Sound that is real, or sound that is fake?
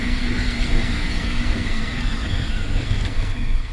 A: fake